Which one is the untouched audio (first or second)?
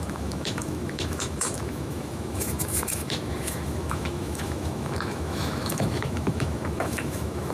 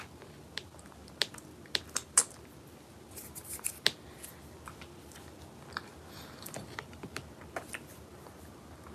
second